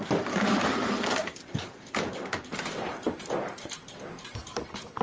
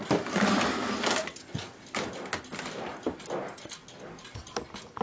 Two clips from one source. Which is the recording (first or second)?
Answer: second